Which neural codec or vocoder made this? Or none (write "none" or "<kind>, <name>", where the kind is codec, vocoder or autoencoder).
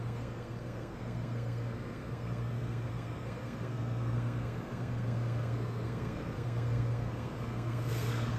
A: codec, SNAC